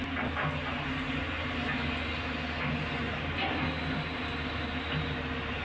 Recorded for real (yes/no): yes